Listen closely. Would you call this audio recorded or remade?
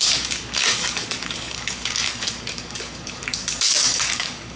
remade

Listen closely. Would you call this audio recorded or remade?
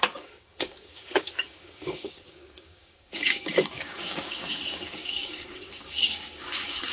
remade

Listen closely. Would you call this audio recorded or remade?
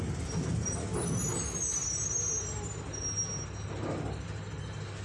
recorded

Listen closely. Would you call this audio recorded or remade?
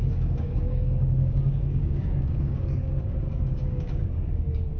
remade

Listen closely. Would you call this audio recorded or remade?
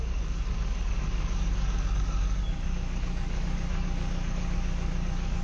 remade